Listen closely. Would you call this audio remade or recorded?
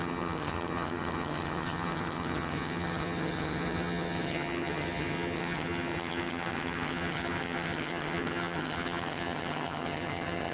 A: remade